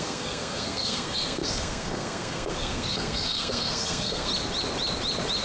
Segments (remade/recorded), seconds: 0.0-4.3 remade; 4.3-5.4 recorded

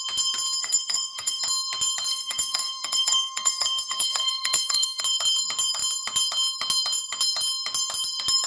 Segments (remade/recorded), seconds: 0.0-0.6 recorded; 0.6-1.4 remade; 1.4-2.1 recorded; 2.1-5.0 remade; 5.0-8.5 recorded